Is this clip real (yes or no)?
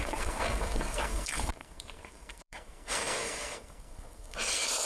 no